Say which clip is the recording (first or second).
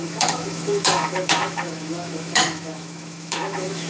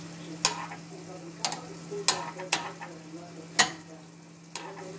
second